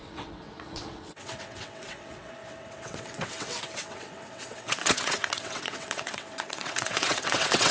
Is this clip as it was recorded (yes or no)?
no